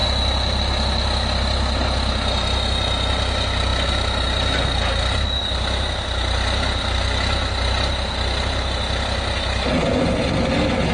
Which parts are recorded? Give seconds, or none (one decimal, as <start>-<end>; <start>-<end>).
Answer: 0.0-10.9